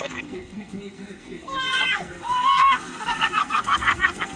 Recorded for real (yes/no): no